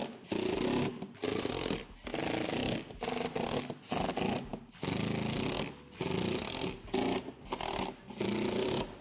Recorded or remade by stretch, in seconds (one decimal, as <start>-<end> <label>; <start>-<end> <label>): 0.0-9.0 recorded